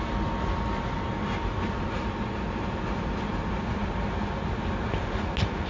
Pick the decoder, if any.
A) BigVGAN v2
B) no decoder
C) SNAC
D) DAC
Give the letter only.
B